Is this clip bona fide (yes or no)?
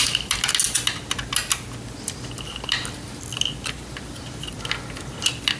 yes